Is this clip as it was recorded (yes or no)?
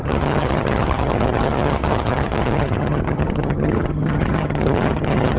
no